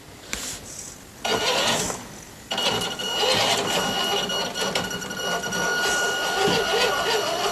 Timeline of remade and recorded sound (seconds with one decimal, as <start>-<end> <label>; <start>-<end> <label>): 0.0-7.5 recorded